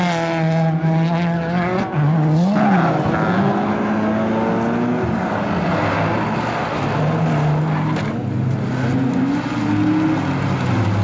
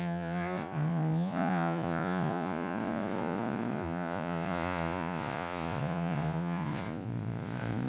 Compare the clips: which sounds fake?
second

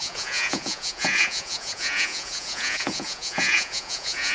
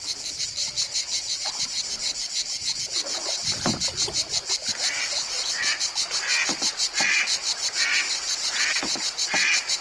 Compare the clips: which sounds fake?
first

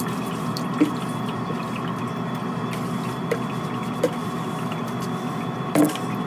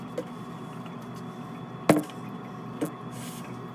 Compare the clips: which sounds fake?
first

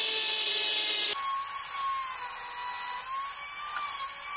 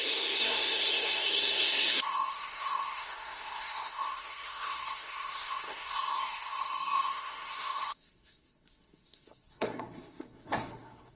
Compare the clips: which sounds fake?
second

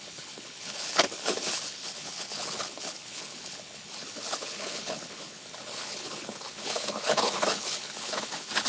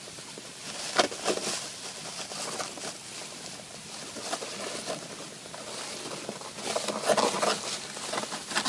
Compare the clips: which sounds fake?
first